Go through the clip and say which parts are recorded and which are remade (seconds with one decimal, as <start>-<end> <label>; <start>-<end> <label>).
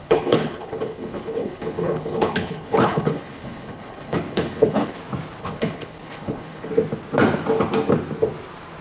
0.0-5.0 remade; 5.0-5.4 recorded; 5.4-6.7 remade; 6.7-8.8 recorded